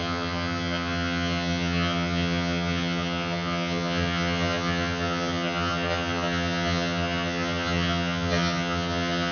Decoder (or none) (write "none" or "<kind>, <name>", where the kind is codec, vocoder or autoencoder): vocoder, HiFi-GAN